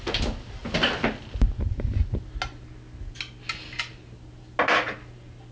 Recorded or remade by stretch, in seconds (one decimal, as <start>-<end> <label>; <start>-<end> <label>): 0.0-5.5 recorded